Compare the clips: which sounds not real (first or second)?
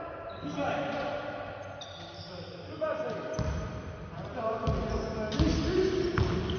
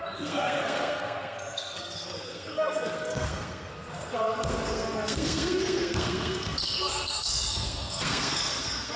second